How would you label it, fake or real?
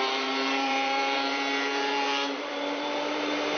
fake